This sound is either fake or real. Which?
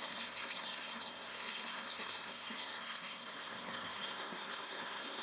fake